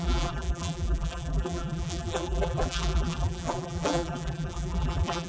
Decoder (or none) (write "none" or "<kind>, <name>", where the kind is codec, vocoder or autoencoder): vocoder, BigVGAN v2